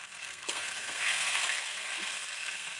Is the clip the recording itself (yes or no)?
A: no